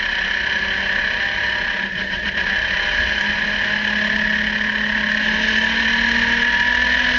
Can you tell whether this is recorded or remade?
recorded